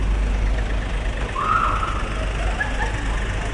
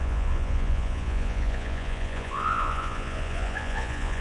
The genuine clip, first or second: first